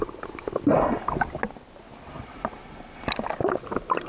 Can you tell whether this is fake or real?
real